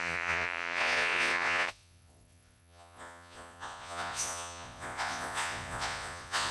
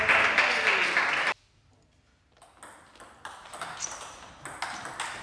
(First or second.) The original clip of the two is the second